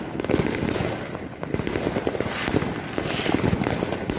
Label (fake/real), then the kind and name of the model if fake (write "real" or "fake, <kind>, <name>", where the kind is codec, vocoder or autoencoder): real